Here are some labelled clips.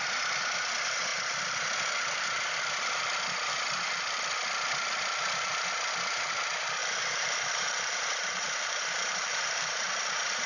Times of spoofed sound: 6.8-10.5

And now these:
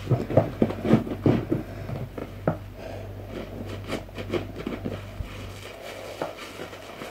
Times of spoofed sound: 2.2-5.5; 6.4-7.1

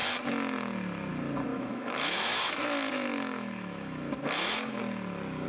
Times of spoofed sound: 1.5-4.8

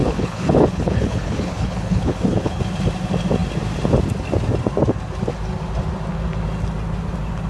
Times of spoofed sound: 0.0-2.6

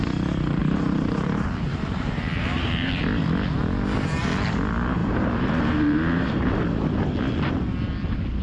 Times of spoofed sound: 0.6-3.0; 5.0-6.5

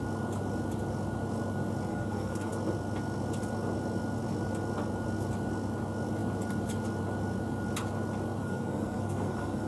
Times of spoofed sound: 1.9-2.5; 8.4-9.7

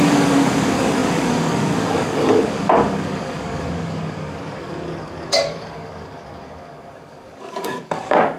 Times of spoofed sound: 0.0-8.4

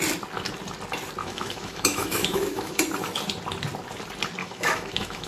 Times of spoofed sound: 1.2-2.8; 4.4-5.3